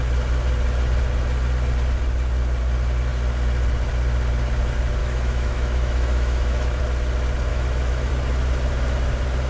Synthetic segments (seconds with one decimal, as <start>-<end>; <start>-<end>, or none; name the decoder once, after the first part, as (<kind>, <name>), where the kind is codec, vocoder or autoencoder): 5.0-6.8 (autoencoder, DAC-VAE); 7.5-8.1